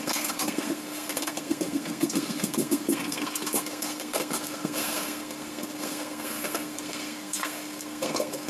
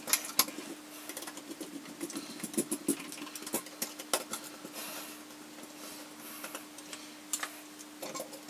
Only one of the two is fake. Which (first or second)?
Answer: first